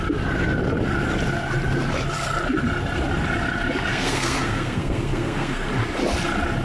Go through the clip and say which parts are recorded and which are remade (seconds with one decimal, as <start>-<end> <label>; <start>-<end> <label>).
0.0-3.9 recorded; 3.9-5.7 remade; 5.7-6.6 recorded